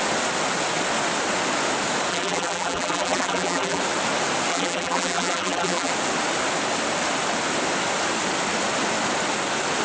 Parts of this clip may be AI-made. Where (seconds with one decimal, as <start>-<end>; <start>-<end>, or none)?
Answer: 2.1-3.8; 4.5-5.9

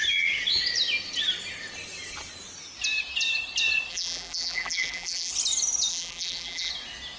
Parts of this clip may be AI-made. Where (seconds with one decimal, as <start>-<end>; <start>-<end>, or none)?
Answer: 3.9-5.3; 5.9-6.7

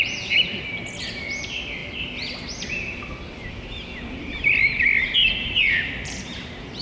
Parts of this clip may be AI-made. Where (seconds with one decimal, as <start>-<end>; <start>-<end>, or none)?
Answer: 5.4-6.8